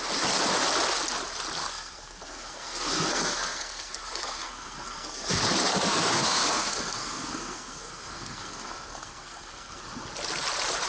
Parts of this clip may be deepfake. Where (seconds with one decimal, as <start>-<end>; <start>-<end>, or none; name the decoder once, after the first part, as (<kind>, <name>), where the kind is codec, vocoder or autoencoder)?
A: 1.6-5.3 (codec, SNAC); 5.7-9.8